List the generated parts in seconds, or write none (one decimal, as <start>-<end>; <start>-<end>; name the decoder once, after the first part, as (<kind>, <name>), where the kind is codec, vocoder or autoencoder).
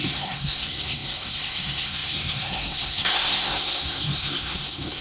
0.0-5.0 (codec, SNAC)